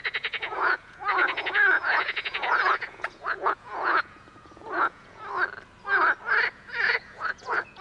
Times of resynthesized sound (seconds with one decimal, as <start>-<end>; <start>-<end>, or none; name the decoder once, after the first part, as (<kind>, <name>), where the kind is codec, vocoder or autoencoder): 0.0-5.2 (vocoder, Vocos); 6.5-7.8